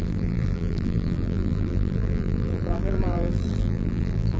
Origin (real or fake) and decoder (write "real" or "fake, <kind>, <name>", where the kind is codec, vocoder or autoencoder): fake, vocoder, BigVGAN v2